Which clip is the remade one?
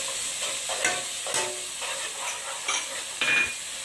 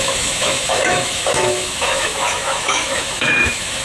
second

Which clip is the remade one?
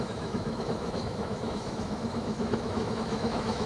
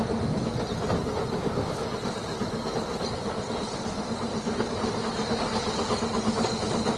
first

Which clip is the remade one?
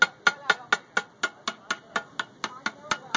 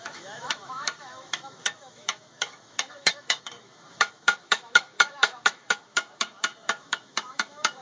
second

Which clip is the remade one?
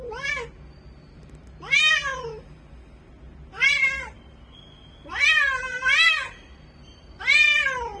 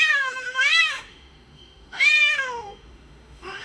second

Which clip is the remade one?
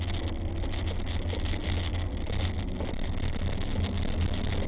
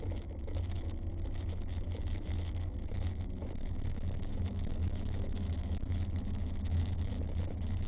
second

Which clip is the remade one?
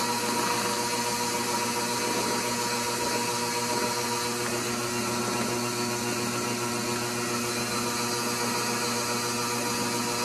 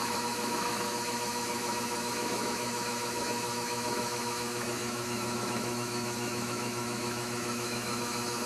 second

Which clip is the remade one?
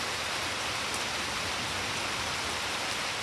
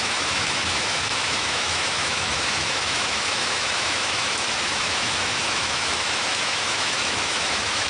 second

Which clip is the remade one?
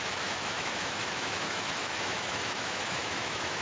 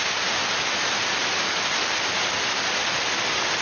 first